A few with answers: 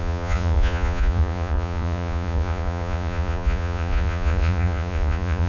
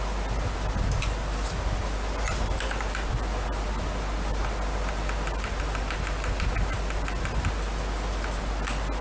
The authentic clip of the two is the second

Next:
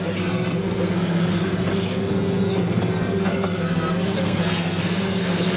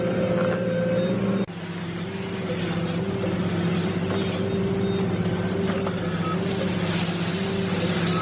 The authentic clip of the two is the second